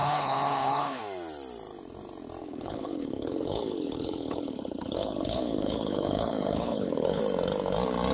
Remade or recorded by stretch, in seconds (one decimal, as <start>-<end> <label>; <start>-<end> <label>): 0.0-1.0 remade; 1.0-2.4 recorded; 2.4-7.2 remade; 7.2-8.1 recorded